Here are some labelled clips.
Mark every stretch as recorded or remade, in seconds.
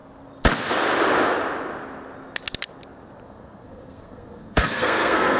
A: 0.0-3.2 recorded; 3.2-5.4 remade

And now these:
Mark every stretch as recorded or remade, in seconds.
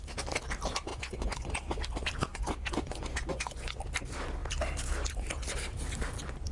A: 0.0-0.9 recorded; 0.9-1.5 remade; 1.5-2.3 recorded; 2.3-3.8 remade; 3.8-6.5 recorded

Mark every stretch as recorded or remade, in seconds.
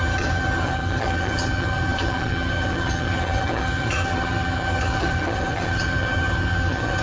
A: 0.0-7.0 remade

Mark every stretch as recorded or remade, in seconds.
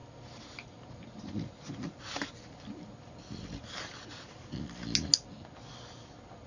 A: 0.0-6.5 recorded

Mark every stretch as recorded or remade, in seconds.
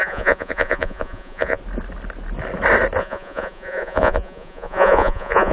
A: 0.0-1.6 remade; 1.6-3.0 recorded; 3.0-5.5 remade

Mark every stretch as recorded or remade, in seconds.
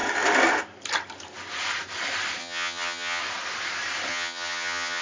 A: 0.0-2.4 recorded; 2.4-3.2 remade; 3.2-4.1 recorded; 4.1-5.0 remade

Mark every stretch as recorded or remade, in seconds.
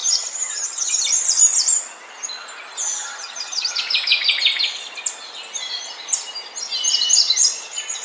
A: 0.0-1.0 remade; 1.0-2.9 recorded; 2.9-3.8 remade; 3.8-8.0 recorded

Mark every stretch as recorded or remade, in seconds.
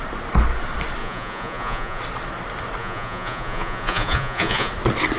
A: 0.0-1.0 recorded; 1.0-2.0 remade; 2.0-2.8 recorded; 2.8-4.7 remade; 4.7-5.2 recorded